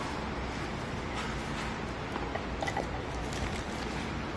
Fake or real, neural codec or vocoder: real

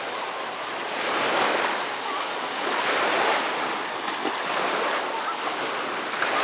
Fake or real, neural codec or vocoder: real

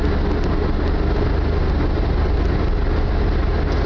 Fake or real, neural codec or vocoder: real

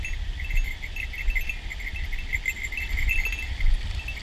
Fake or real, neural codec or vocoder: real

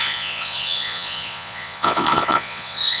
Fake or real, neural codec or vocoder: fake, vocoder, Vocos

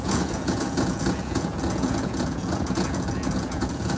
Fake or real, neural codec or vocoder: fake, vocoder, Vocos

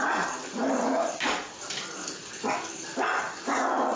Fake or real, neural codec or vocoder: real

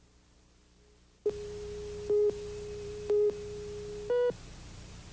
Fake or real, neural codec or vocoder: real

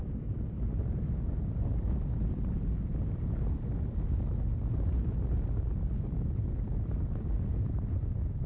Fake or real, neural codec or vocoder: real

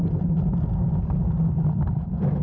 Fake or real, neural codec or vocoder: real